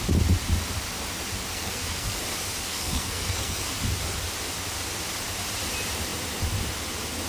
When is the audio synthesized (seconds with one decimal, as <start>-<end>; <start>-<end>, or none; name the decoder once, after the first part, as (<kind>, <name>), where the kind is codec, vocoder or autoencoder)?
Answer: 1.5-2.2 (codec, SNAC); 2.7-3.7